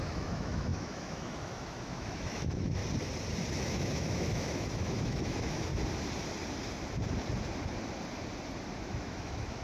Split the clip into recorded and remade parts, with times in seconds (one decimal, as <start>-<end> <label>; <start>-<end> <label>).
0.0-2.8 remade; 2.8-3.5 recorded; 3.5-5.7 remade; 5.7-8.8 recorded; 8.8-9.6 remade